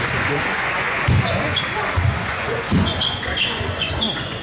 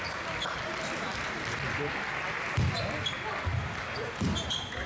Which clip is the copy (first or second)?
first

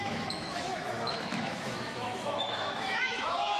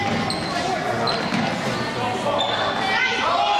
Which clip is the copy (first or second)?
first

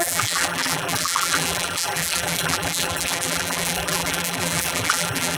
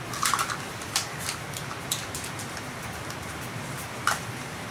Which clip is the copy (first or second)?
first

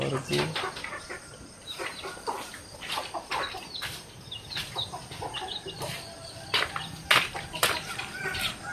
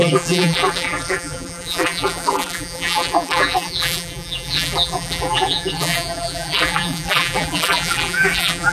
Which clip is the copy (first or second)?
second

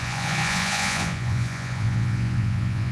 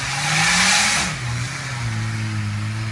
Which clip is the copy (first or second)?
first